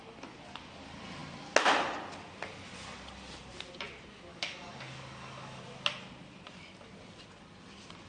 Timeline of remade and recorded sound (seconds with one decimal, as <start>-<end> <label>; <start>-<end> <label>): 0.0-4.3 recorded; 4.3-5.6 remade; 5.6-8.1 recorded